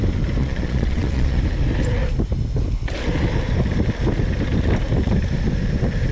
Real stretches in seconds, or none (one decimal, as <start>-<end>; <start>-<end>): 0.0-0.4; 1.4-6.1

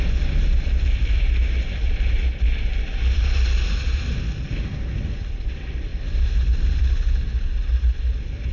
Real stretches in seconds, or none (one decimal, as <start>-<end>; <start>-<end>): 0.0-8.5

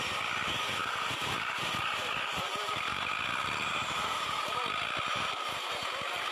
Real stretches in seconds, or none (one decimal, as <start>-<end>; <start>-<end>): 0.0-0.8; 3.1-6.3